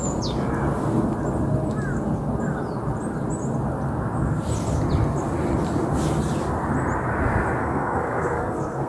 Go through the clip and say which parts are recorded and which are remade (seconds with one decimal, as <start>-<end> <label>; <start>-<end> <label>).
0.0-7.6 recorded; 7.6-8.9 remade